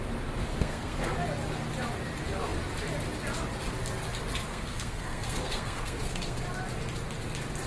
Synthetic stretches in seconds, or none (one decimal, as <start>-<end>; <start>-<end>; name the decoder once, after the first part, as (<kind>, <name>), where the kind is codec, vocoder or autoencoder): 0.5-1.1 (codec, SNAC); 4.5-6.4